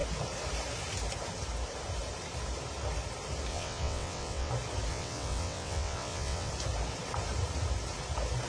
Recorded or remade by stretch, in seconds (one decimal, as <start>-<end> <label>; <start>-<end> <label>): 0.0-3.5 recorded; 3.5-4.5 remade; 4.5-4.9 recorded; 4.9-6.5 remade; 6.5-8.5 recorded